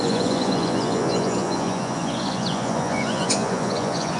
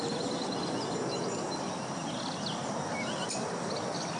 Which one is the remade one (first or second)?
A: first